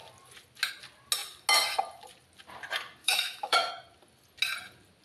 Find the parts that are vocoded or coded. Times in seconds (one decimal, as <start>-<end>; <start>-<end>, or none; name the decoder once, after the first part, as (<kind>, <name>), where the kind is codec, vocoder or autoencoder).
3.0-3.7 (autoencoder, DAC-VAE)